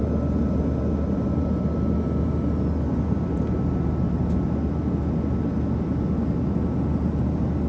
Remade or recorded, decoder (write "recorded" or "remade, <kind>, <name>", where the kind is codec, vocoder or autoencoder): recorded